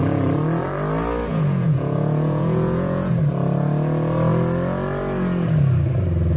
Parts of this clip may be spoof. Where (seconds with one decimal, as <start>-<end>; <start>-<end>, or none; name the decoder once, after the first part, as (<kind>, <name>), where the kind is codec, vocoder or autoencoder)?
1.3-3.1 (vocoder, Vocos)